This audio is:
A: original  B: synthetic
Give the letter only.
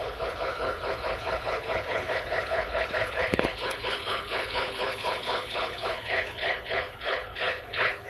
B